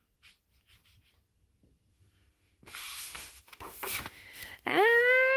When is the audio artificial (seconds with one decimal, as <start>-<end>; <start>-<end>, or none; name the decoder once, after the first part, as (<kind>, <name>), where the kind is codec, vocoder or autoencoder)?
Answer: 1.9-5.4 (autoencoder, DAC-VAE)